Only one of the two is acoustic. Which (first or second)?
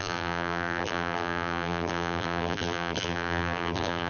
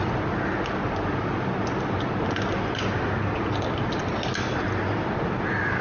second